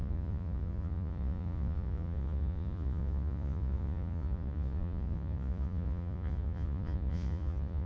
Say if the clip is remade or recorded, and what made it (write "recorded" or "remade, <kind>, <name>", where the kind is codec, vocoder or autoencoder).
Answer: remade, vocoder, Vocos